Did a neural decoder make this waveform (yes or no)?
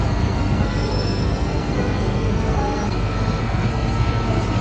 yes